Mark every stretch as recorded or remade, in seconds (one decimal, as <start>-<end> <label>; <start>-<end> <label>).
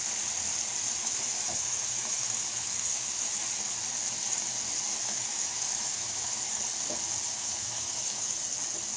0.0-1.0 recorded; 1.0-3.4 remade; 3.4-4.9 recorded; 4.9-6.6 remade; 6.6-7.3 recorded; 7.3-8.4 remade; 8.4-9.0 recorded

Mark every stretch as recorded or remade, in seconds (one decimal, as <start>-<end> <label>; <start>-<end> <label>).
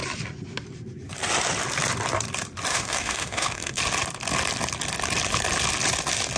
0.0-2.7 recorded; 2.7-3.8 remade; 3.8-6.4 recorded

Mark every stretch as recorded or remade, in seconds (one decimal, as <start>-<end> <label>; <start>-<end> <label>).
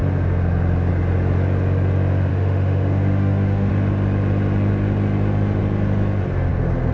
0.0-2.3 recorded; 2.3-3.7 remade; 3.7-6.9 recorded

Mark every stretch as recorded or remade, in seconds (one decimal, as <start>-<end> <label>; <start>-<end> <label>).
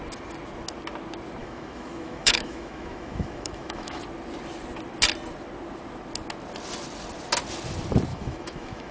0.0-1.4 recorded; 1.4-4.0 remade; 4.0-8.1 recorded; 8.1-8.9 remade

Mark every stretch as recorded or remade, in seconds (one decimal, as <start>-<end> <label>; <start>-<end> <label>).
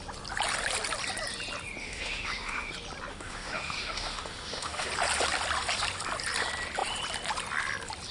0.0-1.8 recorded; 1.8-2.7 remade; 2.7-3.1 recorded; 3.1-4.9 remade; 4.9-8.1 recorded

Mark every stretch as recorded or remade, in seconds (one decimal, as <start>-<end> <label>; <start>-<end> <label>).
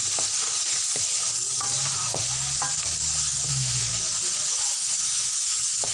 0.0-3.5 recorded; 3.5-3.9 remade; 3.9-4.5 recorded; 4.5-5.9 remade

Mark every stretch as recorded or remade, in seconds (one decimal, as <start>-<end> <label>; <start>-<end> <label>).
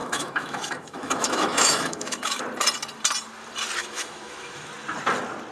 0.0-2.4 remade; 2.4-3.8 recorded; 3.8-4.7 remade; 4.7-5.5 recorded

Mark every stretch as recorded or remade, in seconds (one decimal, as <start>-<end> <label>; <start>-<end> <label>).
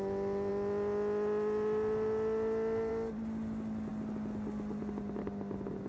0.0-5.9 recorded